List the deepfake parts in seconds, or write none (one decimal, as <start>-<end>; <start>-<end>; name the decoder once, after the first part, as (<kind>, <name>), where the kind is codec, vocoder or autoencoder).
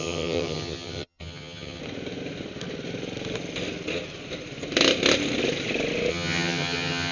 0.0-1.8 (vocoder, HiFi-GAN); 6.1-7.1